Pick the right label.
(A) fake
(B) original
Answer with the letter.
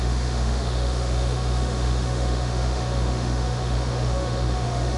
A